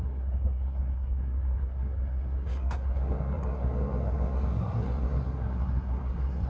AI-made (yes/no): yes